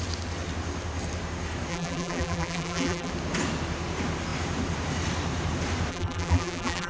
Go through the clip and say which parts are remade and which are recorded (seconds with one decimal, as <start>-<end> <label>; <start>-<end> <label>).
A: 0.0-1.7 recorded; 1.7-3.1 remade; 3.1-5.9 recorded; 5.9-6.9 remade